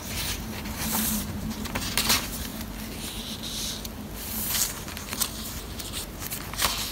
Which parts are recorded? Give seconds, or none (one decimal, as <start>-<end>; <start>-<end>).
2.5-4.5